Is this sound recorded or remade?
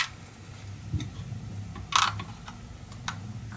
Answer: recorded